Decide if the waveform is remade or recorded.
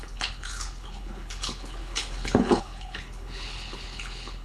remade